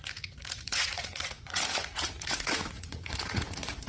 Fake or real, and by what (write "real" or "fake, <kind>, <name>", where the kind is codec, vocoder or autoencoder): fake, vocoder, Vocos